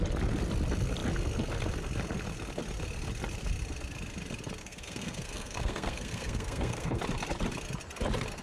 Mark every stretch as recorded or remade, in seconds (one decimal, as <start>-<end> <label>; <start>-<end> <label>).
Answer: 0.0-4.6 recorded; 4.6-7.0 remade; 7.0-8.4 recorded